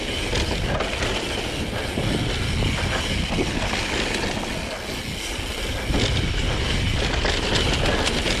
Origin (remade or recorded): recorded